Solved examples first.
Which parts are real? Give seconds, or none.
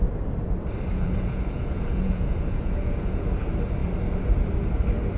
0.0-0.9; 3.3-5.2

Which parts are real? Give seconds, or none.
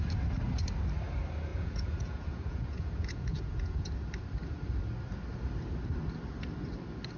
0.0-1.5; 3.9-7.2